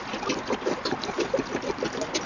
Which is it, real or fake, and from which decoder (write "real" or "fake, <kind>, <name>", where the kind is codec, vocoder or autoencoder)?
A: real